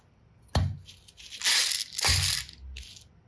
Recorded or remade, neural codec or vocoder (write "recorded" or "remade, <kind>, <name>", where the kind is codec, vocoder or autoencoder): recorded